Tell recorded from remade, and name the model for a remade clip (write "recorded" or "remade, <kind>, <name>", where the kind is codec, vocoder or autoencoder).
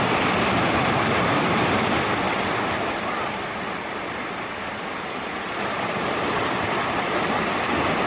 recorded